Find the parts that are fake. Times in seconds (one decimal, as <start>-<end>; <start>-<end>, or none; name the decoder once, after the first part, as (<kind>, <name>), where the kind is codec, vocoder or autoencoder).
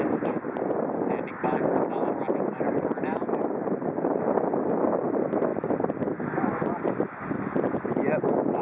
none